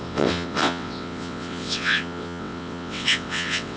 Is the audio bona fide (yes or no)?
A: no